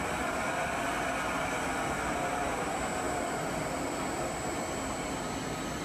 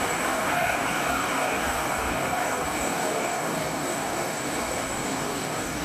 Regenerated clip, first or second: second